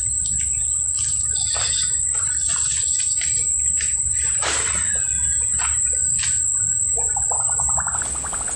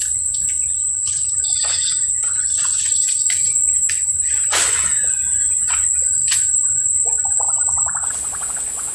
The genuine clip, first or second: first